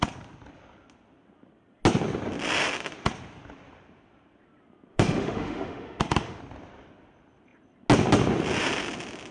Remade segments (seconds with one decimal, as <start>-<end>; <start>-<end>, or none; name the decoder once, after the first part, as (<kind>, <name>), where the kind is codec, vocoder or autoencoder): 4.9-6.4 (autoencoder, DAC-VAE)